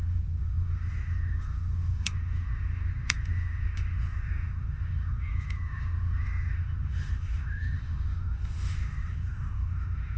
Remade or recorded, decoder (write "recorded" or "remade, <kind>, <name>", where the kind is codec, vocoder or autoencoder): remade, autoencoder, DAC-VAE